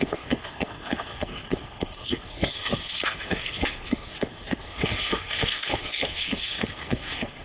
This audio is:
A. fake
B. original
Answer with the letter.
A